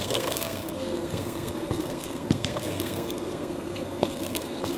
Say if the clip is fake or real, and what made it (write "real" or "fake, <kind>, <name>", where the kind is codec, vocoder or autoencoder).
fake, codec, SNAC